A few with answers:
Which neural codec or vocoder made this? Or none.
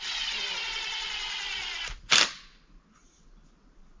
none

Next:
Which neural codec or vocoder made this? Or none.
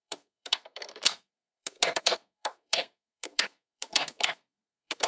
codec, SNAC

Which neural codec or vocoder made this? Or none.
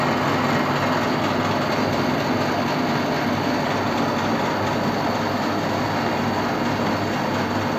none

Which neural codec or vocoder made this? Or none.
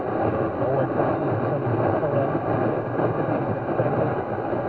none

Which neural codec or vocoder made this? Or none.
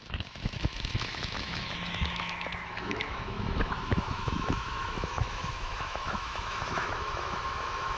autoencoder, DAC-VAE